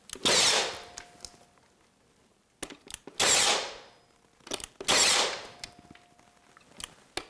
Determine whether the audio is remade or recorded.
recorded